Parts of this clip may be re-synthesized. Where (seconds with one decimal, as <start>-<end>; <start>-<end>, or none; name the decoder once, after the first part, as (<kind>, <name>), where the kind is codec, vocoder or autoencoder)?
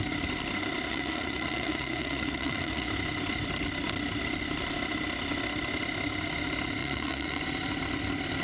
0.9-2.9 (vocoder, Vocos); 6.8-7.4